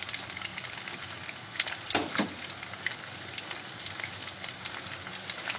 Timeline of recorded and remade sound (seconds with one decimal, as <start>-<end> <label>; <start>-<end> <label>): 0.0-5.6 recorded